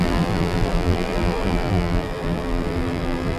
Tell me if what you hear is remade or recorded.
remade